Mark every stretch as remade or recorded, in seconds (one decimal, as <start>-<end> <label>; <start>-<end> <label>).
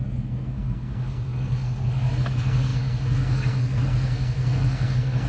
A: 0.0-5.3 remade